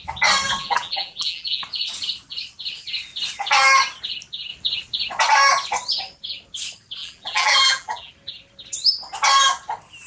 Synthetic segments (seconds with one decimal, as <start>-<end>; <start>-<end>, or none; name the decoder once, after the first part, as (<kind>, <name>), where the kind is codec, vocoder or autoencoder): 0.6-1.6 (vocoder, BigVGAN v2); 7.0-8.1